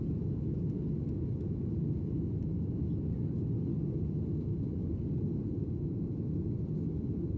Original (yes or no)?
yes